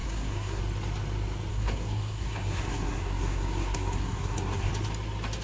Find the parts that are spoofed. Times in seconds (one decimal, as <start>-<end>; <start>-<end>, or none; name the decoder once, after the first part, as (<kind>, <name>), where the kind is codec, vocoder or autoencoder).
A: 0.0-0.6 (codec, SNAC); 1.5-4.7